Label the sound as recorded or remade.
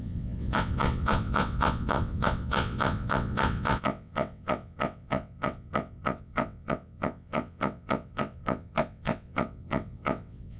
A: remade